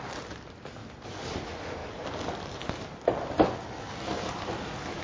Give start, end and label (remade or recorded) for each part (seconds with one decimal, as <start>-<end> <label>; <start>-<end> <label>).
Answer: 0.0-5.0 recorded